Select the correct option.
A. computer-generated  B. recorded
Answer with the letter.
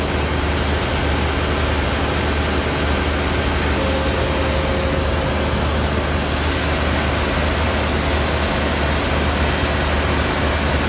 B